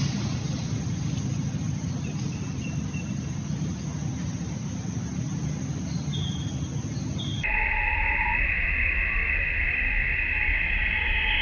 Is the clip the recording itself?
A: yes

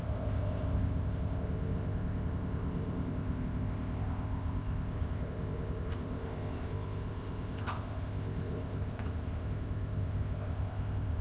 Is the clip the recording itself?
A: no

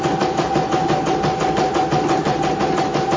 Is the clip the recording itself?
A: yes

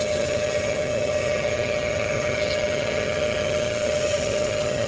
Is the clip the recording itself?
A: no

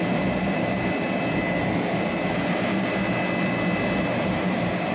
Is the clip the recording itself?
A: yes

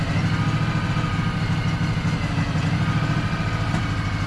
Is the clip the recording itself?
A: yes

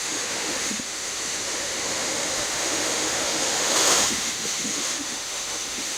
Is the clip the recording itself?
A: no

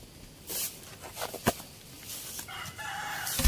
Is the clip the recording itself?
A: yes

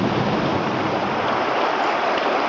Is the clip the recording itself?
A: no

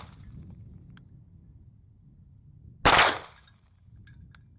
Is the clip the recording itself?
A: yes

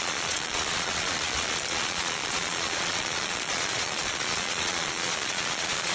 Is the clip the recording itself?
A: no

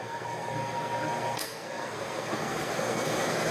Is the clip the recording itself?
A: no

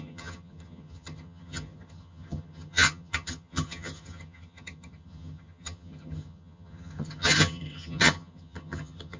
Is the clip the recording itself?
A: no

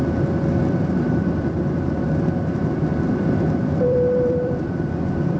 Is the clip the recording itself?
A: no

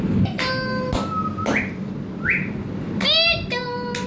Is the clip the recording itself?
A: yes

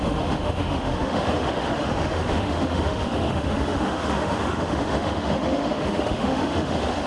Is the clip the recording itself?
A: no